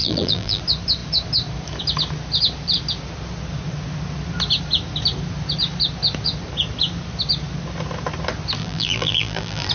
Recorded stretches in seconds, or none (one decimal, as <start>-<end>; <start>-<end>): 0.6-8.6